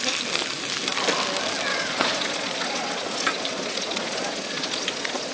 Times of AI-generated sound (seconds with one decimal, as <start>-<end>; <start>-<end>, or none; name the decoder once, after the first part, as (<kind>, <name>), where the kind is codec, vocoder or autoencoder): 1.7-5.3 (vocoder, Vocos)